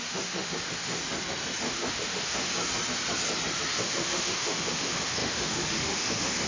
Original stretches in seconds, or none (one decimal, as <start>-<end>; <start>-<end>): 1.0-1.6; 2.5-3.8